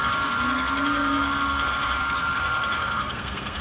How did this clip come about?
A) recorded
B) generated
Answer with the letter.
B